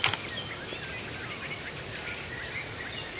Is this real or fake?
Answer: real